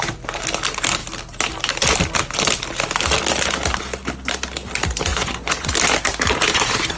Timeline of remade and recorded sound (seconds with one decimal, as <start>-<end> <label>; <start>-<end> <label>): 0.0-5.1 recorded; 5.1-5.7 remade; 5.7-7.0 recorded